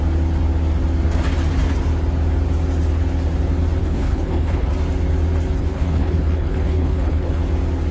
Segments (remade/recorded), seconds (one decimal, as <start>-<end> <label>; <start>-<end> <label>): 0.0-3.8 recorded; 3.8-4.7 remade; 4.7-5.6 recorded; 5.6-7.4 remade; 7.4-7.9 recorded